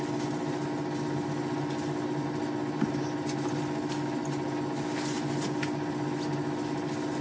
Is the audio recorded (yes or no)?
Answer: yes